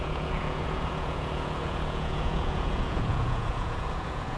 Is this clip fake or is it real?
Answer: fake